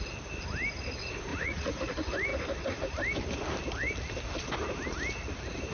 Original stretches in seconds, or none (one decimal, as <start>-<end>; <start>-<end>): 0.0-1.3; 1.8-5.7